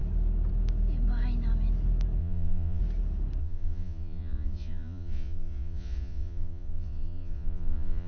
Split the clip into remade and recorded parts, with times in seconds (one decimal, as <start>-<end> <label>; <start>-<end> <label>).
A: 0.0-2.2 recorded; 2.2-2.8 remade; 2.8-3.4 recorded; 3.4-8.1 remade